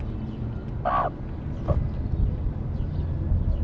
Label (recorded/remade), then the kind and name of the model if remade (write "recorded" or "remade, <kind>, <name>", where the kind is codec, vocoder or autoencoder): recorded